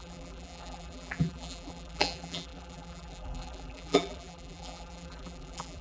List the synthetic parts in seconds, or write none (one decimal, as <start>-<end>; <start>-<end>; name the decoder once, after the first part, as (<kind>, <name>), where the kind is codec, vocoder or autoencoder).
0.0-5.8 (vocoder, BigVGAN v2)